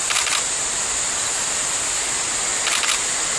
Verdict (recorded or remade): recorded